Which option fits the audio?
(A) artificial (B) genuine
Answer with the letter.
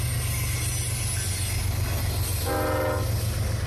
B